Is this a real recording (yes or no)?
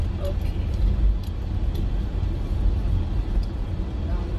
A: yes